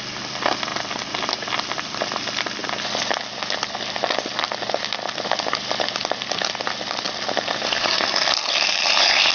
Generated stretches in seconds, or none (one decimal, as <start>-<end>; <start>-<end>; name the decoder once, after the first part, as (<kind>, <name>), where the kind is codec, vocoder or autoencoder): none